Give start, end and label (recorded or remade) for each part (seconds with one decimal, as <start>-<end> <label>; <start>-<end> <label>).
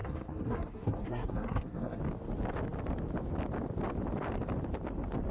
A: 0.0-2.0 remade; 2.0-5.3 recorded